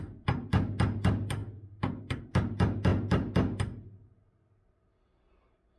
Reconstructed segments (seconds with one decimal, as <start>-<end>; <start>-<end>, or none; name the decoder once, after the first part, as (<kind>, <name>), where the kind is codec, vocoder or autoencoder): none